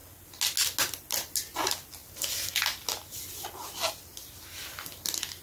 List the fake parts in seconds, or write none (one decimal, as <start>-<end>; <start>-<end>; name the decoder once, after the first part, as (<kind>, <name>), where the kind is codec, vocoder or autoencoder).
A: none